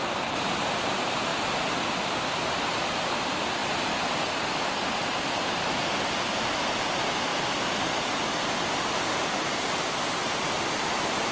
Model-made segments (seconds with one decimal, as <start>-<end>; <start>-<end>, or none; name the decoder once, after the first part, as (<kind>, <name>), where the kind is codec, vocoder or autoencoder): none